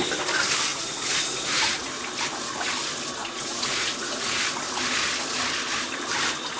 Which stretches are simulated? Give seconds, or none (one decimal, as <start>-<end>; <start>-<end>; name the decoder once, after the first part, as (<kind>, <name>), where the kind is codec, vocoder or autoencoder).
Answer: 0.7-1.9 (vocoder, Vocos); 3.2-4.4